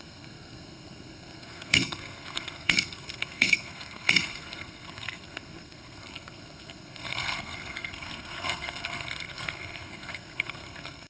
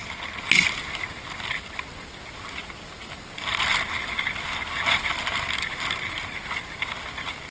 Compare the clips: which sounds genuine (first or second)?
second